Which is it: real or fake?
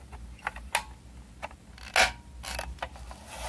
real